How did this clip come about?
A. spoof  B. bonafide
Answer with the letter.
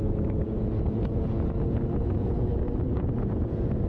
A